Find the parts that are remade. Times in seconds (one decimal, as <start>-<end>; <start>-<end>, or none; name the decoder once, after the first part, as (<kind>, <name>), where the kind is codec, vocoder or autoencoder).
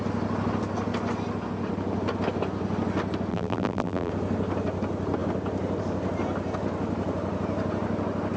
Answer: 3.3-4.1 (vocoder, BigVGAN v2)